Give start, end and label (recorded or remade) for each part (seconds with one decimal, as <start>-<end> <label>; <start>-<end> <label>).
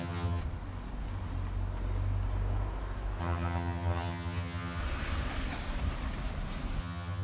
0.0-0.4 remade; 0.4-3.2 recorded; 3.2-4.8 remade; 4.8-6.8 recorded; 6.8-7.2 remade